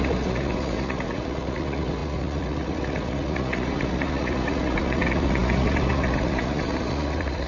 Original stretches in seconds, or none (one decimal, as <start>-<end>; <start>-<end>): none